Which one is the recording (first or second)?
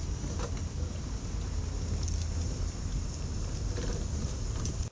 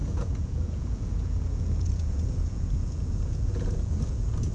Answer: first